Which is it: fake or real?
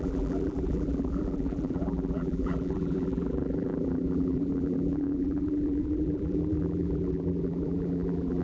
fake